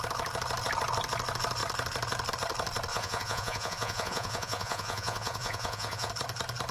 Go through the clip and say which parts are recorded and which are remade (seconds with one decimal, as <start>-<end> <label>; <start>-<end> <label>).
0.0-2.9 recorded; 2.9-6.1 remade; 6.1-6.7 recorded